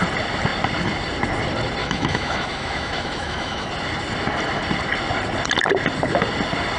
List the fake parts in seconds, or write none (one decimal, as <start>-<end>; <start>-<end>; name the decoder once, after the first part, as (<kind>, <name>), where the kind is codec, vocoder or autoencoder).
1.8-3.7 (autoencoder, DAC-VAE)

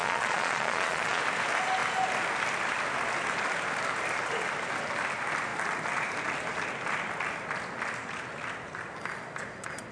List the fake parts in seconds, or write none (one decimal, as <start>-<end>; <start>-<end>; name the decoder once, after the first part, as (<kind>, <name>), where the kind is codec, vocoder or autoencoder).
0.0-1.2 (vocoder, Vocos)

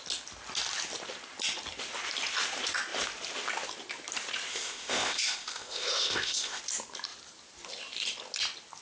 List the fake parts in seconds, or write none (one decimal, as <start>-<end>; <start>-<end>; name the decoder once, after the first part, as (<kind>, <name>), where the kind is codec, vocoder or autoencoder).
4.5-6.6 (codec, ZipCodec)

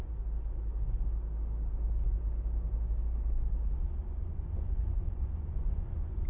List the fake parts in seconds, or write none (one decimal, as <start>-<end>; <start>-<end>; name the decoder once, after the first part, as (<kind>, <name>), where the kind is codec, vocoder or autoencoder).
4.0-6.3 (vocoder, Vocos)